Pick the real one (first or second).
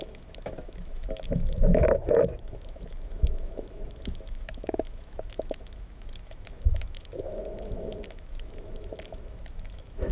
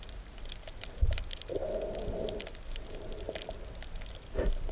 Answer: second